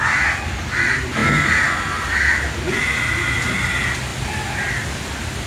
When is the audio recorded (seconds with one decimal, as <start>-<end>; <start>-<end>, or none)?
0.0-5.5